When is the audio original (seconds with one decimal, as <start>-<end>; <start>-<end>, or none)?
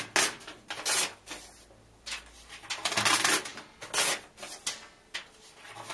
0.0-5.9